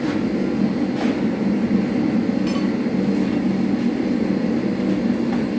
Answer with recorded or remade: recorded